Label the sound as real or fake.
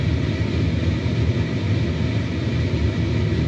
real